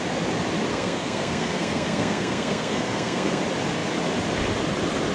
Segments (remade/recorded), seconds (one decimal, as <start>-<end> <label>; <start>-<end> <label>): 0.0-0.7 recorded; 0.7-3.4 remade; 3.4-5.1 recorded